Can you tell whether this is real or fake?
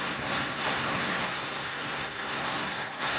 fake